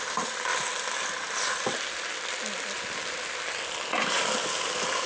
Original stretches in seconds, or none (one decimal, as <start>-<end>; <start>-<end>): 0.0-5.1